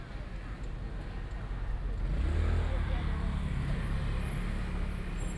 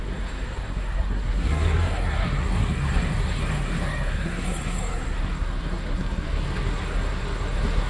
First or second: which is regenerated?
second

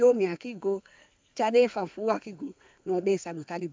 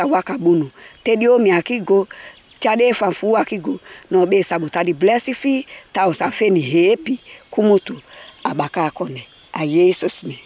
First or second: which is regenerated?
first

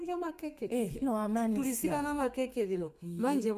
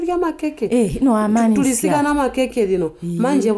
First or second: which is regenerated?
first